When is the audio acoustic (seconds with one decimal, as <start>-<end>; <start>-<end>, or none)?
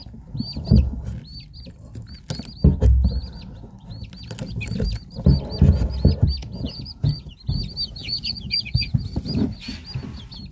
0.0-6.4; 7.4-8.0; 8.9-10.5